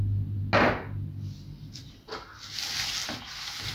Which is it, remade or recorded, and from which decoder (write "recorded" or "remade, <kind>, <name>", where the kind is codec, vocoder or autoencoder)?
recorded